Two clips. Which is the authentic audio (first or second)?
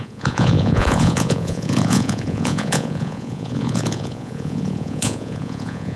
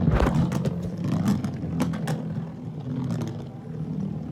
second